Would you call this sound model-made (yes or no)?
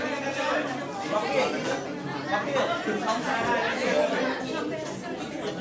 no